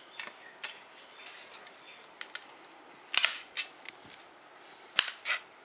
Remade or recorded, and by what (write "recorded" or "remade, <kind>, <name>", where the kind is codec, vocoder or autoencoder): recorded